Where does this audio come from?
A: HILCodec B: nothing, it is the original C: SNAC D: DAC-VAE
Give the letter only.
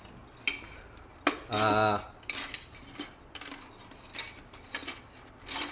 B